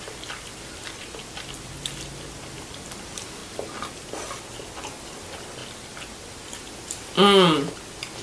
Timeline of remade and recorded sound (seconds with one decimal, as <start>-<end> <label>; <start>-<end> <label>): 0.0-8.2 recorded